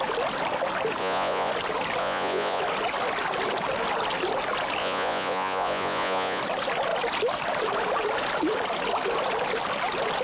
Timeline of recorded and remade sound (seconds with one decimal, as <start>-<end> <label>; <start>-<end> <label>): 0.0-1.0 recorded; 1.0-1.5 remade; 1.5-2.0 recorded; 2.0-2.6 remade; 2.6-4.8 recorded; 4.8-6.4 remade; 6.4-10.2 recorded